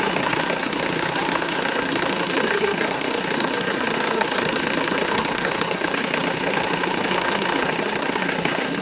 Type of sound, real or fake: fake